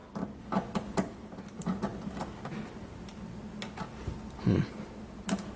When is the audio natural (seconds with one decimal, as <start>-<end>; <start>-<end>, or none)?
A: 0.0-5.6